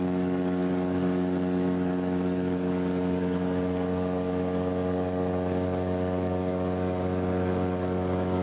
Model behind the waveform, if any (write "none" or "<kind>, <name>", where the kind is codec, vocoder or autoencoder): codec, DAC